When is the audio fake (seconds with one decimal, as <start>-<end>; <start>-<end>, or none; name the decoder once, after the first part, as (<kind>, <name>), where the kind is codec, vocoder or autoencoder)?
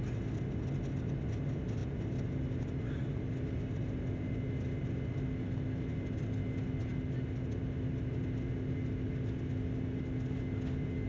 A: none